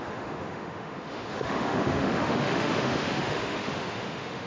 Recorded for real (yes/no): no